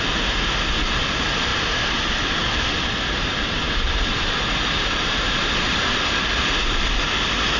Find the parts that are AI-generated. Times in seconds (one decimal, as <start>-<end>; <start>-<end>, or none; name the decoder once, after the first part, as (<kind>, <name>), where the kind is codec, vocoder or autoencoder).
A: 1.5-6.1 (vocoder, BigVGAN v2)